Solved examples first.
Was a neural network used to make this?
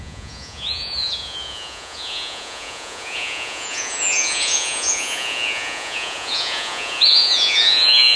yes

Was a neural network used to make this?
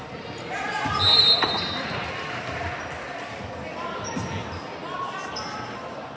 no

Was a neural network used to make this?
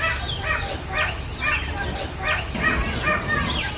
no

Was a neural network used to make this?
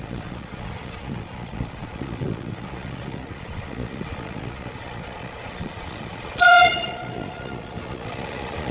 yes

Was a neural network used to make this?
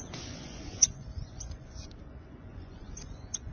yes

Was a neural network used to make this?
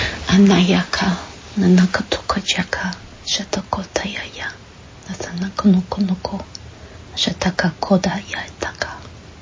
no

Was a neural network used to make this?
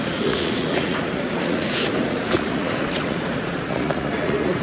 yes